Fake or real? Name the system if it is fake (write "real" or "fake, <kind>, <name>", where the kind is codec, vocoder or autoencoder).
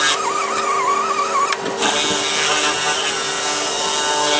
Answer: real